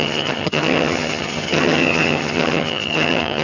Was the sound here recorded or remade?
remade